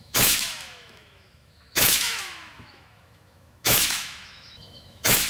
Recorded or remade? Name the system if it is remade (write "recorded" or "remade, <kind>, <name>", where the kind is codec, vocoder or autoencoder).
remade, autoencoder, DAC-VAE